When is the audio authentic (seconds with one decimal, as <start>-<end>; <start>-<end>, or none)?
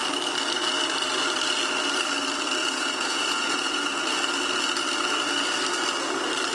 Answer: 0.0-2.6; 4.0-6.5